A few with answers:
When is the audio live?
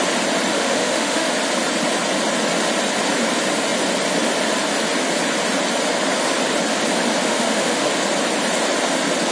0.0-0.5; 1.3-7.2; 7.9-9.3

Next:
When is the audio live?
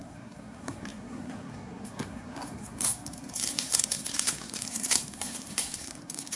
none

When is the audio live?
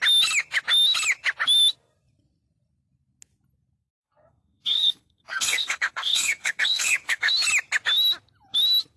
0.0-3.8; 7.3-9.0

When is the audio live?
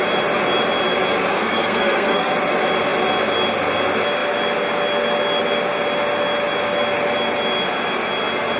0.0-1.3; 2.3-8.6